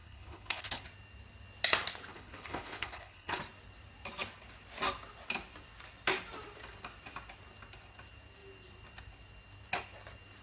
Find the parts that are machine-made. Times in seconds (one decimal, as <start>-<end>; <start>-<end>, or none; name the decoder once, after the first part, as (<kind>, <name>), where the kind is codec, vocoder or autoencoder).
0.0-0.8 (codec, HILCodec); 2.1-3.4